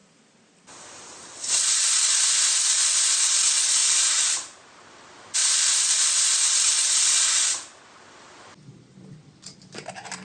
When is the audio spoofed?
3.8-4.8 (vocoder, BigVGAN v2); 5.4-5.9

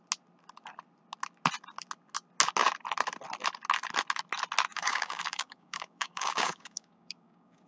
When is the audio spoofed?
4.7-7.7 (codec, DAC)

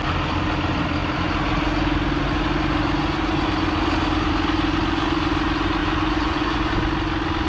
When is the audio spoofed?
5.8-6.7 (vocoder, Vocos)

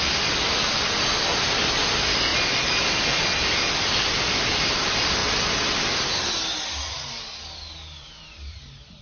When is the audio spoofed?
none

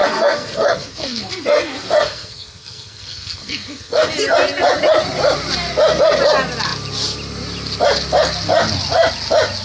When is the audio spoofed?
0.0-4.1 (codec, SNAC)